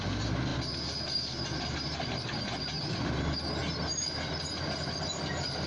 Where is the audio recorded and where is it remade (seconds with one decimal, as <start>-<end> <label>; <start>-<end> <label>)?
0.0-5.7 recorded